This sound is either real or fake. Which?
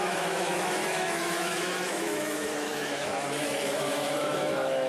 fake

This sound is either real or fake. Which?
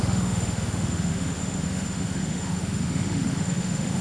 fake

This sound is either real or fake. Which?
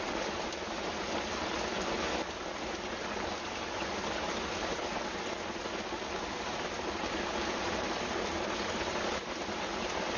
real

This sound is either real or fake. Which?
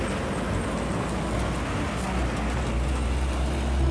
real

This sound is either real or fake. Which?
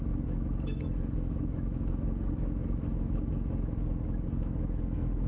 fake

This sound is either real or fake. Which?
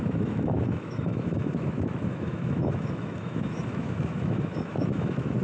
fake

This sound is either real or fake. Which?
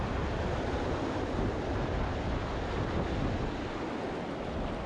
real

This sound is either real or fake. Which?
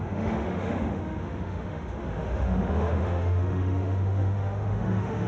fake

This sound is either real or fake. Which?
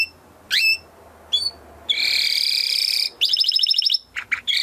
real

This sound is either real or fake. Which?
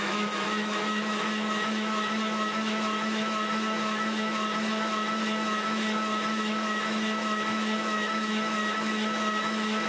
fake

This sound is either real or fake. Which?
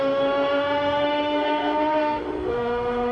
fake